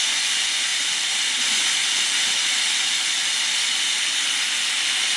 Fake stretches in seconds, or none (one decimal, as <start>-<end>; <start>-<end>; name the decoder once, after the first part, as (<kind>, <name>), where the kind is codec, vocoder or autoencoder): 0.0-0.7 (vocoder, Vocos); 1.4-1.8